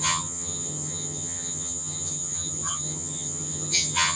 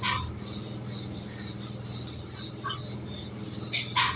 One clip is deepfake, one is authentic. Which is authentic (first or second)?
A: second